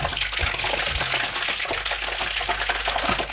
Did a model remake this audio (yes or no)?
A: no